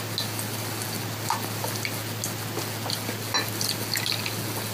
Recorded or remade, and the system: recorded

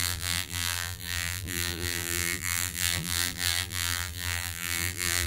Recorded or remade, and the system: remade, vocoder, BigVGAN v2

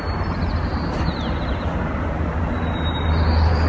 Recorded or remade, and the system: recorded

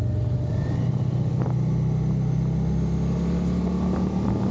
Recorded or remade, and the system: recorded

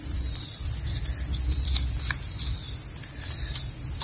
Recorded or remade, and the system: remade, vocoder, BigVGAN v2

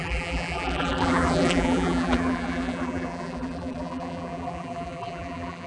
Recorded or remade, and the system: remade, vocoder, BigVGAN v2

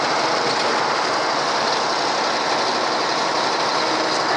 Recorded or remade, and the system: recorded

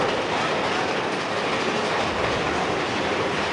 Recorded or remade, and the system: recorded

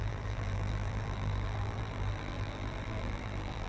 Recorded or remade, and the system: remade, vocoder, BigVGAN v2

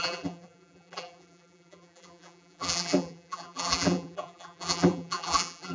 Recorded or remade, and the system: remade, vocoder, BigVGAN v2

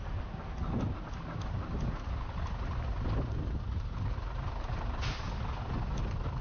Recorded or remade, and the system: recorded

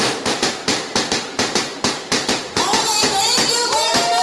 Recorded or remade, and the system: remade, vocoder, BigVGAN v2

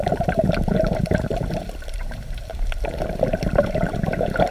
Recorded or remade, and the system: remade, vocoder, BigVGAN v2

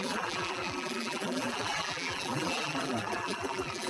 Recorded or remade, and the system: remade, vocoder, BigVGAN v2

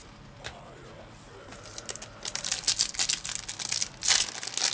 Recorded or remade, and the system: recorded